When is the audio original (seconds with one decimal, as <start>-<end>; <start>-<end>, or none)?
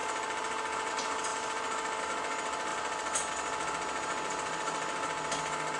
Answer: 0.0-5.8